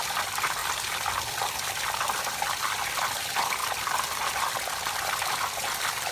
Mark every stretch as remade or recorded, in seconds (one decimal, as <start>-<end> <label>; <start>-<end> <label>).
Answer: 0.0-6.1 recorded